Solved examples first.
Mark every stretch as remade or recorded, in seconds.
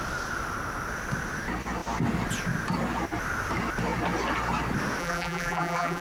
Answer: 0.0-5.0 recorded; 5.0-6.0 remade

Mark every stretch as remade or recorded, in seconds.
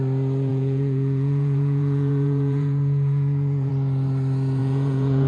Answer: 0.0-0.5 recorded; 0.5-3.7 remade; 3.7-4.6 recorded; 4.6-5.3 remade